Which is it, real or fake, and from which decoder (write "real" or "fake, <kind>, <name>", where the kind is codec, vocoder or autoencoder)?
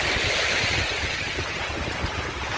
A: fake, vocoder, BigVGAN v2